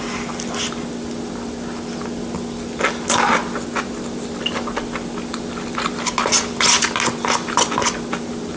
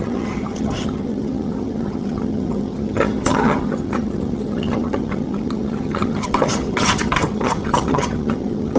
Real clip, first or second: first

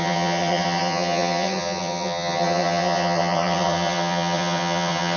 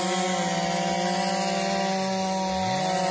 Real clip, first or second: second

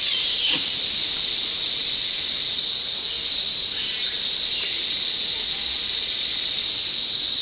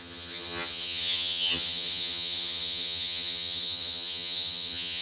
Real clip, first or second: first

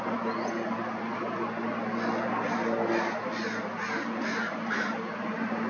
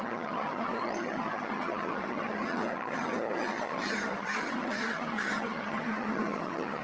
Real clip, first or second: first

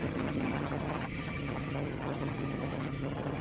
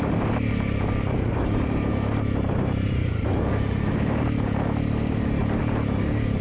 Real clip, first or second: second